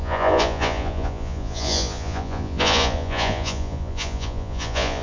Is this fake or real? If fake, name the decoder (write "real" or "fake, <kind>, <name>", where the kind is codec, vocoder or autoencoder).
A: fake, vocoder, Vocos